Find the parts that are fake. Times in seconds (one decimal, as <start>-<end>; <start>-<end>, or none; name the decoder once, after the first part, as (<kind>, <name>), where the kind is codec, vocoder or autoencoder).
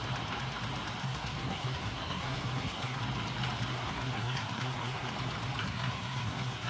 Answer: 1.0-3.0 (codec, SNAC); 3.7-5.1; 5.6-6.7